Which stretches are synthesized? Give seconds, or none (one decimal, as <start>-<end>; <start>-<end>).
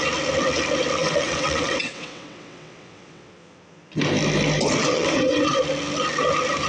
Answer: 1.0-3.3; 4.8-5.6